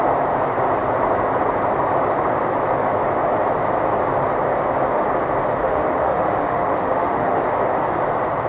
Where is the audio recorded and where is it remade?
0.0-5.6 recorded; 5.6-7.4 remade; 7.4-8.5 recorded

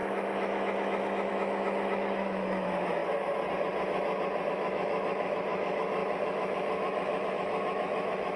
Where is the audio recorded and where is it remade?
0.0-3.0 remade; 3.0-4.5 recorded; 4.5-8.4 remade

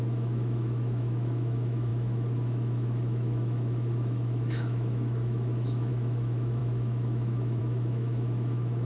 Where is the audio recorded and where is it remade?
0.0-8.8 remade

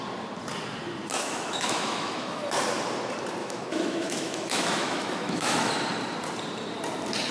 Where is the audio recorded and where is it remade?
0.0-1.1 recorded; 1.1-2.4 remade; 2.4-3.4 recorded; 3.4-5.7 remade; 5.7-7.3 recorded

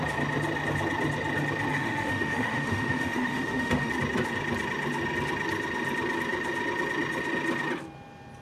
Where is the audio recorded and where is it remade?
0.0-1.7 recorded; 1.7-3.9 remade; 3.9-8.4 recorded